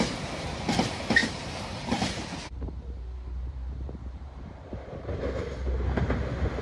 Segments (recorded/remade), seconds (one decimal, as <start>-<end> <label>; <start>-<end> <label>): 0.0-1.2 recorded; 1.2-5.2 remade; 5.2-6.6 recorded